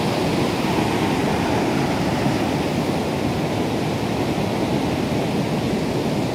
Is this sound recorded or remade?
recorded